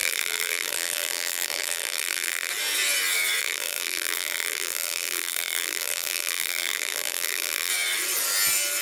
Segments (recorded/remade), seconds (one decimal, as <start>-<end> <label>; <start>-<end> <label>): 0.0-2.5 remade; 2.5-3.4 recorded; 3.4-7.7 remade; 7.7-8.8 recorded